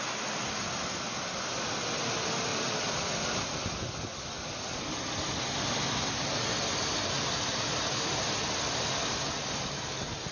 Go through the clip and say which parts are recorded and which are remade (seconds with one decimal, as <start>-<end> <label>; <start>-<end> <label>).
0.0-10.3 recorded